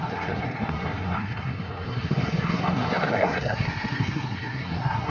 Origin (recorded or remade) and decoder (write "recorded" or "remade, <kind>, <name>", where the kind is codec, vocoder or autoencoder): remade, codec, SNAC